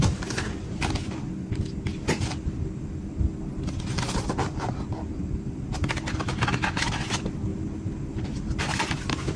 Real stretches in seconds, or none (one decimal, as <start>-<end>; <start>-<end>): 0.0-9.4